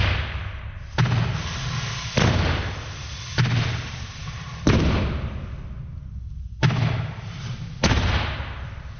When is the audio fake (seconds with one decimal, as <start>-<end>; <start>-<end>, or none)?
none